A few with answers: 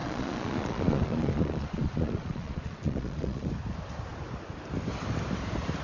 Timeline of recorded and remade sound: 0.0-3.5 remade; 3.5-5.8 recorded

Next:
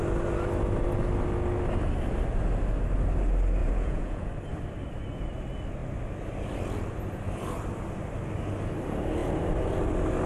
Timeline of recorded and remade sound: 0.0-3.6 recorded; 3.6-4.3 remade; 4.3-10.3 recorded

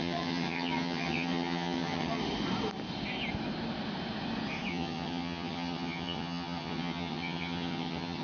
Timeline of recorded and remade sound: 0.0-2.2 remade; 2.2-4.7 recorded; 4.7-8.2 remade

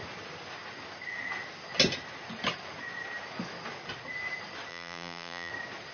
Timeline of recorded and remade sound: 0.0-4.7 recorded; 4.7-5.5 remade; 5.5-5.9 recorded

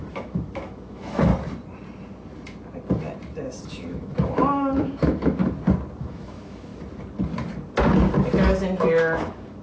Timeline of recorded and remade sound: 0.0-1.3 remade; 1.3-3.6 recorded; 3.6-5.4 remade; 5.4-6.0 recorded; 6.0-6.7 remade; 6.7-8.8 recorded; 8.8-9.6 remade